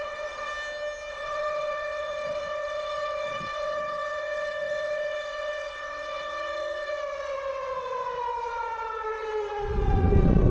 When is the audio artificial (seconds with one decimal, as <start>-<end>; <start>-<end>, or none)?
0.0-0.5; 1.1-10.5